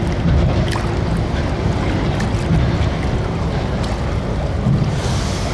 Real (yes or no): yes